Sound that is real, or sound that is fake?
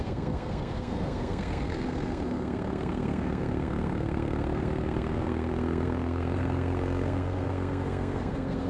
fake